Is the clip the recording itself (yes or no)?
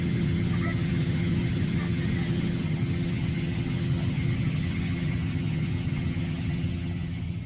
no